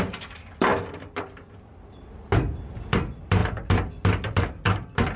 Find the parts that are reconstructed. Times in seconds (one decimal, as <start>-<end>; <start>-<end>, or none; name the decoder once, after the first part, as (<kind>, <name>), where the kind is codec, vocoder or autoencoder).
none